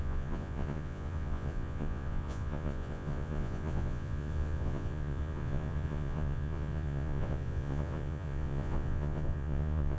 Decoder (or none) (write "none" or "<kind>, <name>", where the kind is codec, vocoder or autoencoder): vocoder, Vocos